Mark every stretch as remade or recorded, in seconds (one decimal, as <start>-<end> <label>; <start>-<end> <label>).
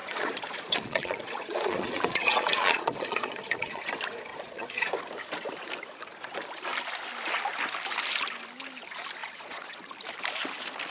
0.0-3.8 remade; 3.8-4.3 recorded; 4.3-4.9 remade; 4.9-9.2 recorded; 9.2-9.9 remade; 9.9-10.9 recorded